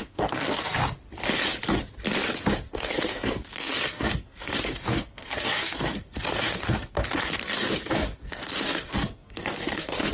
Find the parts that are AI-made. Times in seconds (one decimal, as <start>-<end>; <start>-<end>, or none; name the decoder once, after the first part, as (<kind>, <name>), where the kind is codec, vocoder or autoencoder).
0.0-0.8 (codec, SNAC); 2.7-10.1